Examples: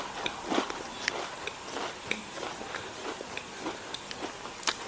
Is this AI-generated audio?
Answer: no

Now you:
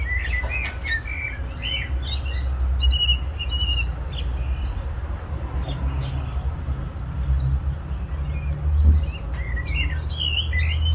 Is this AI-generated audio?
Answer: no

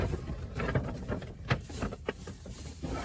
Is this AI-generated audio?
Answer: yes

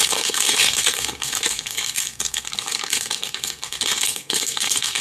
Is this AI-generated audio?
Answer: yes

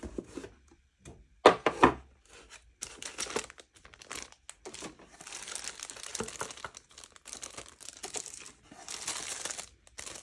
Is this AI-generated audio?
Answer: no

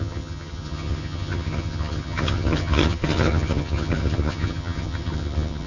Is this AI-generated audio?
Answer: yes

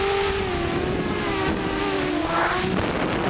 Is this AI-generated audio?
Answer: no